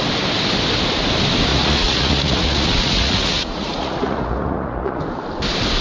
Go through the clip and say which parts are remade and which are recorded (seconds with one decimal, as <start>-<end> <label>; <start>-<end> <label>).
0.0-1.5 recorded; 1.5-5.0 remade; 5.0-5.8 recorded